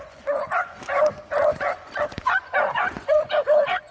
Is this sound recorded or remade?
remade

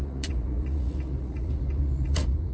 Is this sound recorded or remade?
remade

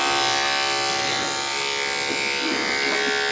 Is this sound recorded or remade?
recorded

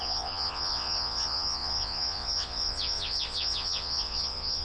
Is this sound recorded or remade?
remade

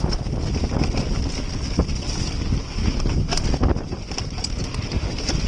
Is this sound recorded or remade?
recorded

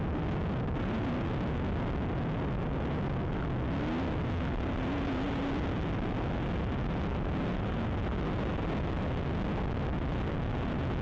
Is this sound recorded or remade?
recorded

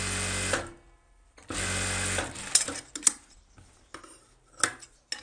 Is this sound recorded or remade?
recorded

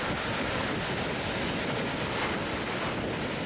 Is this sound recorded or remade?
recorded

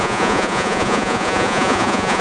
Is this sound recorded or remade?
remade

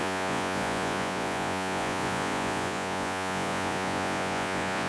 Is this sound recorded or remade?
remade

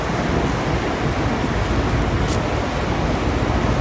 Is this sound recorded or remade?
recorded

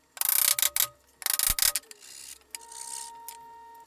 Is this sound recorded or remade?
recorded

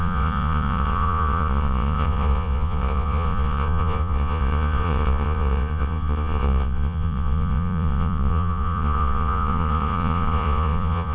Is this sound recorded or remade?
remade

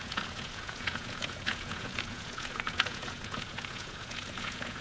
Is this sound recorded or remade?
remade